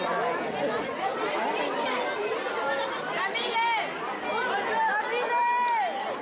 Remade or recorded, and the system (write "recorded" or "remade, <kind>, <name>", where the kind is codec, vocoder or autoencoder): recorded